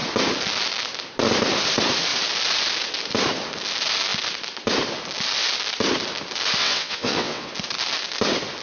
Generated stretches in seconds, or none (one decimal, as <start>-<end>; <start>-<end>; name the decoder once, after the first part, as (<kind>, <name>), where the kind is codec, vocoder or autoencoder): 6.6-7.5 (vocoder, WaveNeXt)